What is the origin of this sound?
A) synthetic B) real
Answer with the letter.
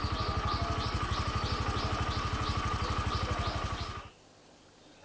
B